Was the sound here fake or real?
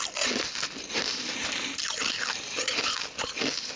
real